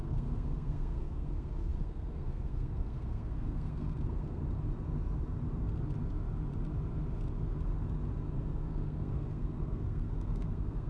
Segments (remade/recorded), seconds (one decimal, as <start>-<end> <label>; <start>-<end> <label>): 0.0-4.4 remade; 4.4-8.3 recorded; 8.3-10.9 remade